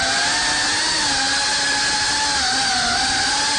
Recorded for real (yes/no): yes